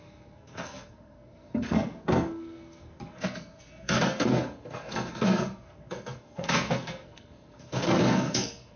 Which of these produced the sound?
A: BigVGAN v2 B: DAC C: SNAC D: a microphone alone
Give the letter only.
C